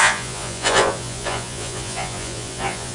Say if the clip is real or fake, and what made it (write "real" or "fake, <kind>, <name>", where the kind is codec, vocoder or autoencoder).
fake, vocoder, Vocos